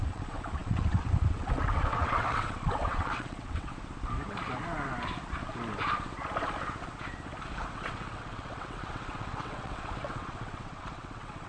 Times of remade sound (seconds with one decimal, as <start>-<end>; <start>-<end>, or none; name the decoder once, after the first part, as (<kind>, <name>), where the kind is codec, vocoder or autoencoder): 0.0-3.7 (vocoder, WaveNeXt); 7.7-11.5